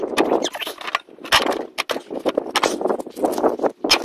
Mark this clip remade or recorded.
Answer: recorded